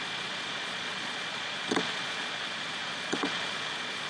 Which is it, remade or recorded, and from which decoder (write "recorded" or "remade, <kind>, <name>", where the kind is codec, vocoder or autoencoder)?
remade, vocoder, Vocos